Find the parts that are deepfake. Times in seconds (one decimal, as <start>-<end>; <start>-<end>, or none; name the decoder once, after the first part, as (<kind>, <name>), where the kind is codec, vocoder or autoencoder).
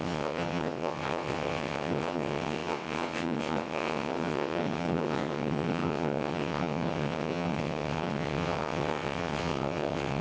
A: 0.0-10.2 (vocoder, WaveNeXt)